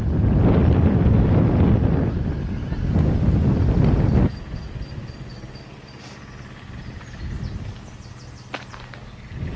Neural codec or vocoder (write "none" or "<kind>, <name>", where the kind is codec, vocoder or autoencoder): none